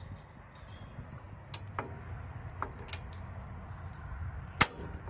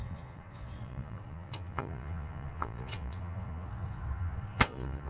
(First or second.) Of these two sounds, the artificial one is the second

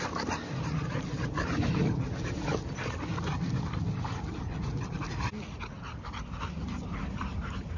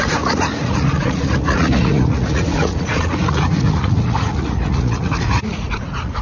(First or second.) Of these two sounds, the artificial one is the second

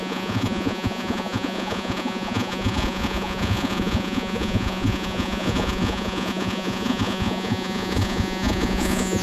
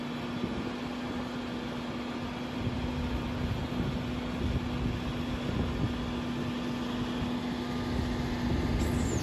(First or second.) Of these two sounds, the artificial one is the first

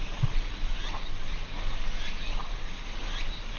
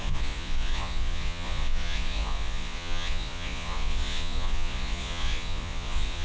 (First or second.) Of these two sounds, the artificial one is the second